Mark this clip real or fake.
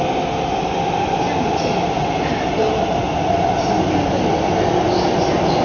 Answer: real